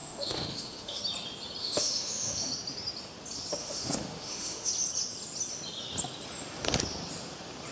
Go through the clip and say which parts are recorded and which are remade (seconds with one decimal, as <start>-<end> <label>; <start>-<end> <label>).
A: 0.0-1.0 remade; 1.0-1.6 recorded; 1.6-2.5 remade; 2.5-3.6 recorded; 3.6-4.7 remade; 4.7-7.7 recorded